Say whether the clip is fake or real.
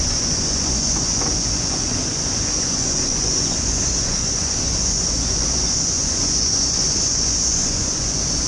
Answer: fake